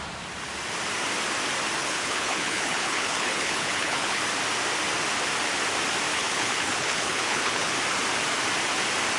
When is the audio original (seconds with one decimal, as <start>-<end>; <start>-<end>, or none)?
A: 0.0-1.8; 4.2-6.1; 7.7-9.2